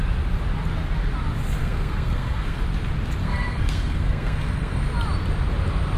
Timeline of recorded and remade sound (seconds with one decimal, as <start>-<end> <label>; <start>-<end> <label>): 0.0-1.6 recorded; 1.6-2.6 remade; 2.6-3.2 recorded; 3.2-4.8 remade; 4.8-6.0 recorded